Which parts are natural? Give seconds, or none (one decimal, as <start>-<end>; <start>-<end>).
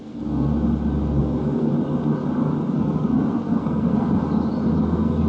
0.5-1.2; 1.7-2.7; 4.2-4.8